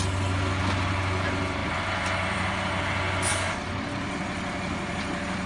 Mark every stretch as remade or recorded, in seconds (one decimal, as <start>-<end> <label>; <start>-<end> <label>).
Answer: 0.0-1.6 recorded; 1.6-2.8 remade; 2.8-3.3 recorded; 3.3-5.0 remade; 5.0-5.5 recorded